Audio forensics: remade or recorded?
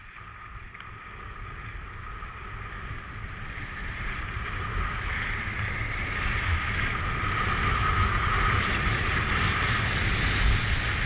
recorded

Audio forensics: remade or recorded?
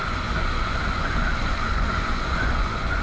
remade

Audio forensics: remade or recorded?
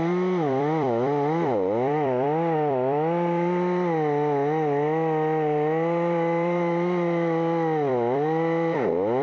remade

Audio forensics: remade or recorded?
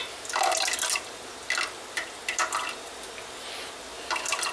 recorded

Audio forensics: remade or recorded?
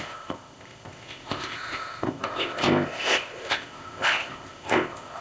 remade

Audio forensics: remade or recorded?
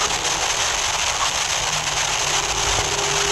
recorded